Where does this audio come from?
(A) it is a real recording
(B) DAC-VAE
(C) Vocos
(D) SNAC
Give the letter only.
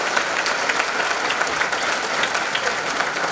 A